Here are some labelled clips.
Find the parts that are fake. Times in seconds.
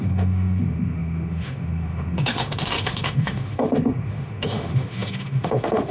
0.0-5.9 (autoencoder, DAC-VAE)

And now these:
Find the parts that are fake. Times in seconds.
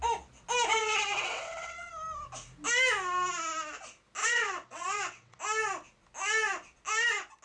0.7-1.9 (vocoder, WaveNeXt); 4.2-5.4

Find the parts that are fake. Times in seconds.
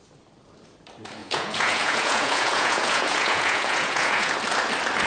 1.2-4.3 (vocoder, Vocos)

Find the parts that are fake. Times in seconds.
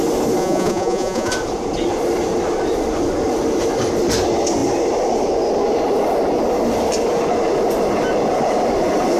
0.4-1.3 (vocoder, Vocos)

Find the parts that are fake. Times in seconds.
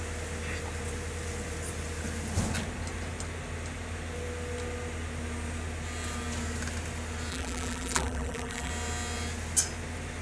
7.3-8.7 (vocoder, BigVGAN v2)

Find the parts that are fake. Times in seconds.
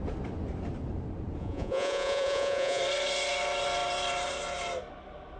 1.4-2.8 (vocoder, Vocos)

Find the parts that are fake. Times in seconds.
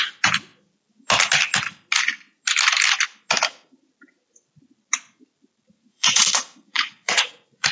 5.9-7.7 (vocoder, Vocos)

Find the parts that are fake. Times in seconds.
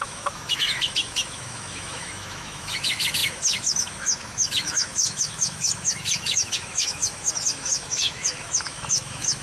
0.0-9.4 (autoencoder, DAC-VAE)